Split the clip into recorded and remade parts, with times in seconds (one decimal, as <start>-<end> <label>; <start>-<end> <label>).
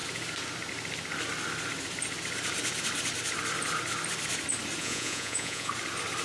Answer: 0.0-4.8 recorded; 4.8-5.7 remade; 5.7-6.2 recorded